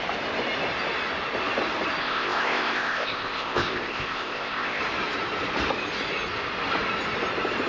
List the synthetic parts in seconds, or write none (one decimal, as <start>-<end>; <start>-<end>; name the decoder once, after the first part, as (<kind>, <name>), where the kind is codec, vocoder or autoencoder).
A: 2.0-4.8 (codec, ZipCodec)